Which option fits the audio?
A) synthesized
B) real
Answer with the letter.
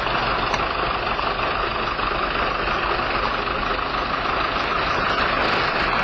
B